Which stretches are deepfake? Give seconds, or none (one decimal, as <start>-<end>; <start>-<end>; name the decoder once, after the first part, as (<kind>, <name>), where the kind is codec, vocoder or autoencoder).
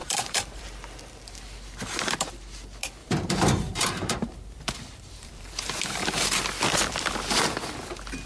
0.0-0.6 (vocoder, BigVGAN v2); 3.0-6.4